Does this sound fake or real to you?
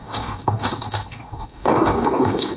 fake